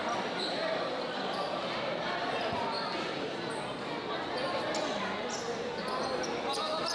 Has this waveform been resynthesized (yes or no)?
no